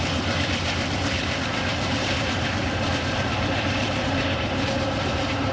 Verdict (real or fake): fake